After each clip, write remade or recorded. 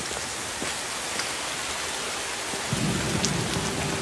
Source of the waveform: recorded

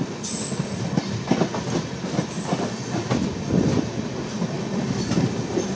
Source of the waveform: recorded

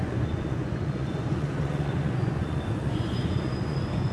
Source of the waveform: remade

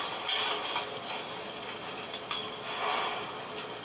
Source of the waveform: recorded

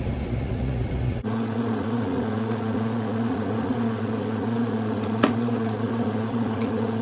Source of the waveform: remade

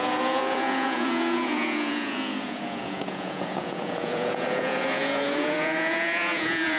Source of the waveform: remade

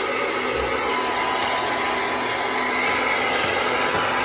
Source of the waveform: recorded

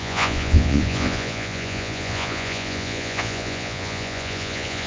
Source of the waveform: remade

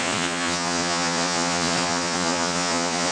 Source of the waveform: remade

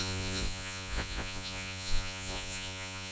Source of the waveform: remade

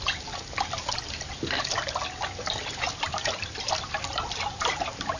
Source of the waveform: recorded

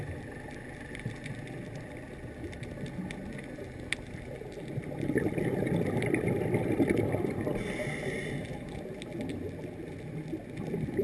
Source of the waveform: recorded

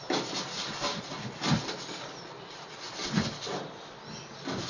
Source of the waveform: recorded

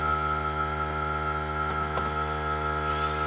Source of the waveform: recorded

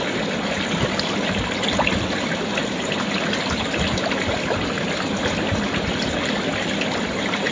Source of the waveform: recorded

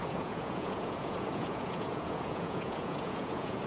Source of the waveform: remade